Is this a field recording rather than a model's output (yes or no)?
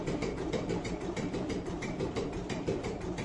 no